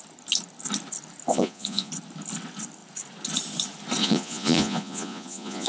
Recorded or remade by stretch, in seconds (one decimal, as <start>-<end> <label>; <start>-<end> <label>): 0.0-1.3 recorded; 1.3-1.9 remade; 1.9-4.0 recorded; 4.0-5.7 remade